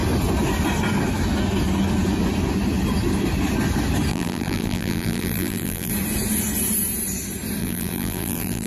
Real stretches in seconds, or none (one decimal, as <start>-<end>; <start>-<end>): 0.0-4.1; 5.9-7.6

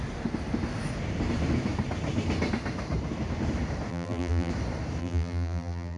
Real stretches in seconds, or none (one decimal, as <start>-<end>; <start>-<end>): 0.0-3.9; 4.5-5.0

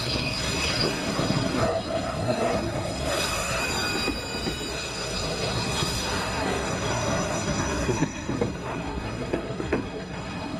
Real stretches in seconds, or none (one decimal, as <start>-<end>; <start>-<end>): 3.6-4.7

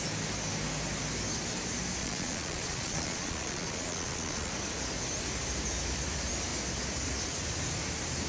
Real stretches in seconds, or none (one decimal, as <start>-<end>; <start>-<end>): 0.0-2.0; 4.5-8.3

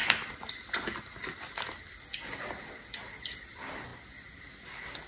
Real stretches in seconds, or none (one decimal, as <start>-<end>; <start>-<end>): 0.0-5.1

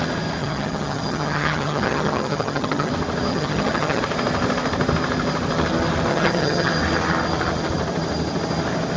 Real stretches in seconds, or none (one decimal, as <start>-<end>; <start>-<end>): 0.0-0.4; 2.9-3.3; 4.0-6.1; 6.7-9.0

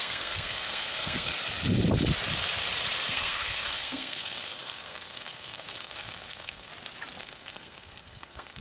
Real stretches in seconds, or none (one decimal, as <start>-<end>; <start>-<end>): 1.4-3.1; 6.7-7.2

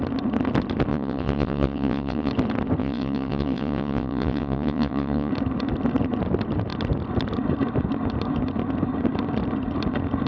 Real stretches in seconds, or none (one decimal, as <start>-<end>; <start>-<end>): 0.0-0.9; 2.3-2.8; 5.3-10.3